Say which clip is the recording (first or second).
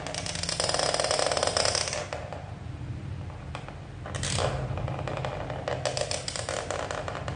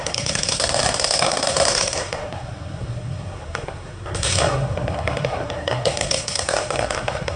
first